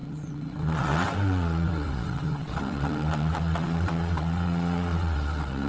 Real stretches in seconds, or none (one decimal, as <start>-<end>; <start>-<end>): none